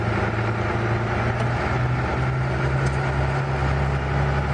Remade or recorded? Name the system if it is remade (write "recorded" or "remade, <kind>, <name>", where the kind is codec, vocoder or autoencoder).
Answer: recorded